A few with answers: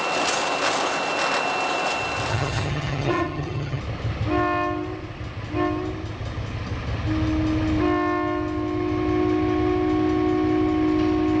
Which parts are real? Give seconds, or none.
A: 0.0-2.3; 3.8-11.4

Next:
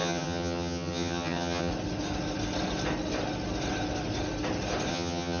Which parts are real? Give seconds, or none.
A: 1.7-4.9

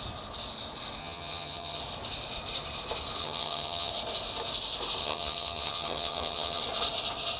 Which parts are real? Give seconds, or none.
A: 0.0-1.0; 1.8-3.2; 3.9-5.0; 6.6-7.4